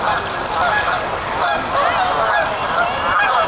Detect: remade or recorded recorded